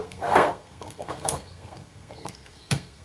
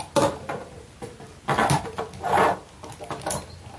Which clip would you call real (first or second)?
second